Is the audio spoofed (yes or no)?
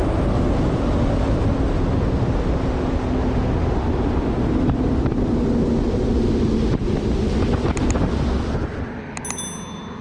no